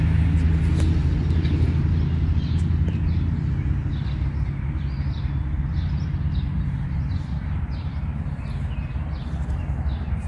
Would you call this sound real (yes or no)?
yes